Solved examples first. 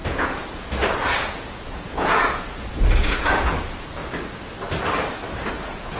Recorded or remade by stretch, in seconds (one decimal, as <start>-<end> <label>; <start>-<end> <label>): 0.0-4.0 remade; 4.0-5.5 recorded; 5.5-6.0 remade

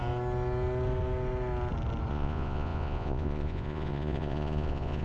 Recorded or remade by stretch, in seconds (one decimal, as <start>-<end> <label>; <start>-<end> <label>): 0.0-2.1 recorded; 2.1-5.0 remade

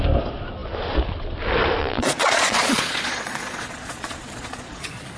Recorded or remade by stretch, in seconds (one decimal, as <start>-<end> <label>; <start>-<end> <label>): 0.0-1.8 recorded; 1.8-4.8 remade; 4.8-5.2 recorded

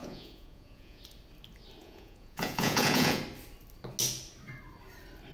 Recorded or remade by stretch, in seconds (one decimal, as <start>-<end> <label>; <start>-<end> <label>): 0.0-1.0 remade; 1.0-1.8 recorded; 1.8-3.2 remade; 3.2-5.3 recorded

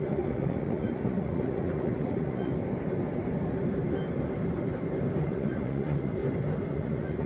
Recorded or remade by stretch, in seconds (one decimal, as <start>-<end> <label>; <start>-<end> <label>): 0.0-2.5 remade; 2.5-5.2 recorded; 5.2-6.2 remade; 6.2-6.7 recorded; 6.7-7.3 remade

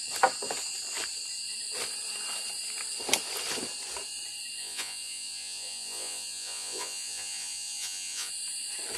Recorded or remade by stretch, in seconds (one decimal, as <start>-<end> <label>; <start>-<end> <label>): 0.0-4.6 recorded; 4.6-8.3 remade; 8.3-9.0 recorded

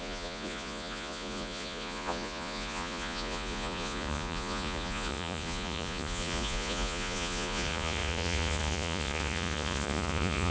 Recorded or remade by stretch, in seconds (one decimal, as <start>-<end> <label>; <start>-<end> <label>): 0.0-10.5 remade